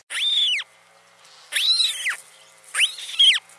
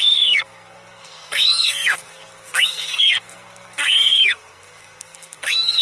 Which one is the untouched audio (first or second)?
first